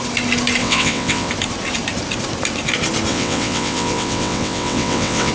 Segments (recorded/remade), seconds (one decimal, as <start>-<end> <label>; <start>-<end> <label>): 0.0-0.6 recorded; 0.6-1.3 remade; 1.3-3.1 recorded; 3.1-5.3 remade